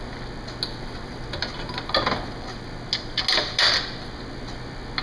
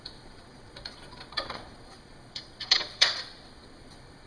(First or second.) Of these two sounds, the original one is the first